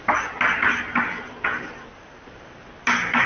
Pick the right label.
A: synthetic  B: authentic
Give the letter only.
B